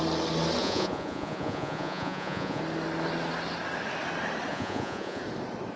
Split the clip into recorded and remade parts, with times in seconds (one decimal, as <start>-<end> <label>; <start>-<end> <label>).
0.0-0.6 recorded; 0.6-2.6 remade; 2.6-4.5 recorded; 4.5-5.2 remade; 5.2-5.8 recorded